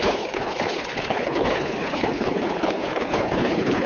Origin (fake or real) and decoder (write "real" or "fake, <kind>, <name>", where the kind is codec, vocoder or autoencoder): fake, codec, HILCodec